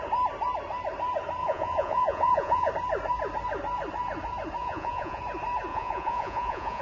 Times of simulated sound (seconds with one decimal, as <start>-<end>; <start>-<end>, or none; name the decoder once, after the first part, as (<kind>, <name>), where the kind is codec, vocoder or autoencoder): 1.4-2.7 (vocoder, Vocos); 4.6-5.2; 5.7-6.8